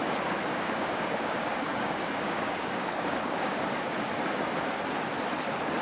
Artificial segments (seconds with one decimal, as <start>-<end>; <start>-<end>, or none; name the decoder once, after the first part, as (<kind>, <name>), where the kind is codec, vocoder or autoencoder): 0.5-3.6 (codec, DAC)